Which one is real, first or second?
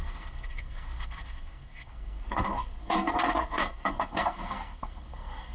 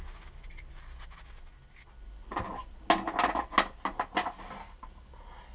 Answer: second